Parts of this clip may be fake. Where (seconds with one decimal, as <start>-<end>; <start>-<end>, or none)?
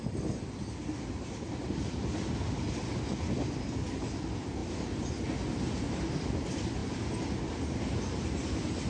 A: none